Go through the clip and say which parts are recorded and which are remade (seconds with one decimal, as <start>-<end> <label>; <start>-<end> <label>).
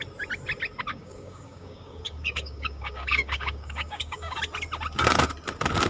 0.0-0.9 recorded; 0.9-4.4 remade; 4.4-5.9 recorded